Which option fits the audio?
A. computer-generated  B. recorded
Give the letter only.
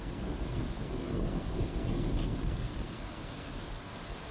A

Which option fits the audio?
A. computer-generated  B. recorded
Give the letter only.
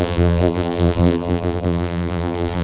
A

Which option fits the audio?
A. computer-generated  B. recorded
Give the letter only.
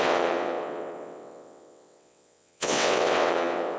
A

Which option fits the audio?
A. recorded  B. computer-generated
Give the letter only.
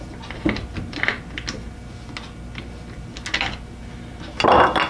A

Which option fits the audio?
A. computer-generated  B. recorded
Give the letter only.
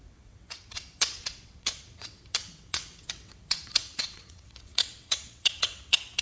A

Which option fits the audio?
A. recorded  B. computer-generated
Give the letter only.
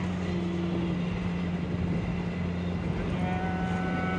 A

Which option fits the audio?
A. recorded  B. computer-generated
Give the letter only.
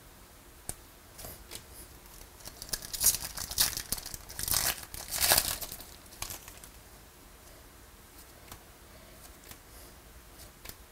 A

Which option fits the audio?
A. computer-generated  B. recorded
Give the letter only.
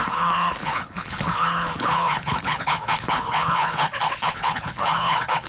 A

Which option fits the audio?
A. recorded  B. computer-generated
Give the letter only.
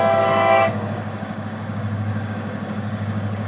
B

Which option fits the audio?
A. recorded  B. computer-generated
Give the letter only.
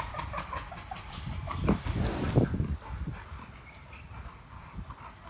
A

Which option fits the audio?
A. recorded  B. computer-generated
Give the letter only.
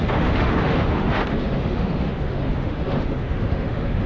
B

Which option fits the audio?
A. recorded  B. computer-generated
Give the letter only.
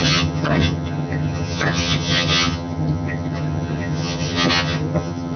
B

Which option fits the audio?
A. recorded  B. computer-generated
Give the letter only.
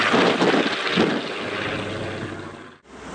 A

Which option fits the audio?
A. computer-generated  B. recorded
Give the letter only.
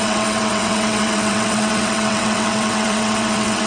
A